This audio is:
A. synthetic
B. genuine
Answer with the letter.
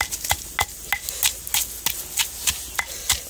B